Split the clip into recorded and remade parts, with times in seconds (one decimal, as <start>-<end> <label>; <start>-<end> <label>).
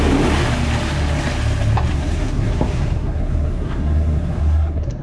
0.0-1.9 recorded; 1.9-5.0 remade